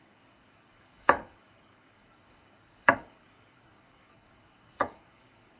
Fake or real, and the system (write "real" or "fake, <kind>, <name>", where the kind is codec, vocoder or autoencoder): fake, codec, DAC